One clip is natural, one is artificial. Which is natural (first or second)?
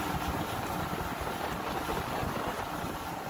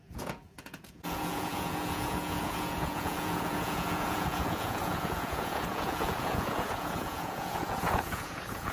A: first